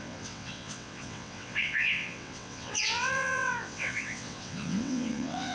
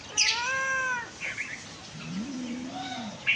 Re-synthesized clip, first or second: first